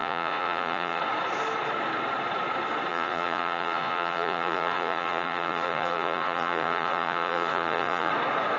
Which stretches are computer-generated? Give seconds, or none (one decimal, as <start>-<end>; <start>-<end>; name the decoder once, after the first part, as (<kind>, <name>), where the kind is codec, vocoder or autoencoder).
0.0-1.0 (vocoder, Vocos); 2.9-8.1